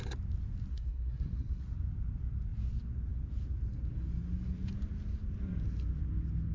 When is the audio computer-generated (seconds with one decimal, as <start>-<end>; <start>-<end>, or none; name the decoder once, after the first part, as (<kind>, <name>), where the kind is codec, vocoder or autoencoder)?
0.7-1.6 (codec, SNAC)